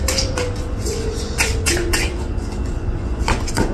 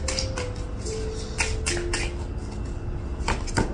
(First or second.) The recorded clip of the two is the second